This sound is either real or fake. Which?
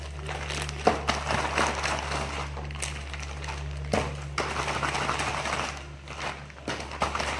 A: real